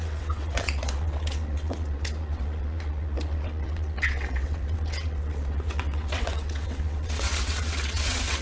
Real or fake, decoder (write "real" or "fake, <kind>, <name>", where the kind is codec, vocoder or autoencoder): fake, vocoder, WaveNeXt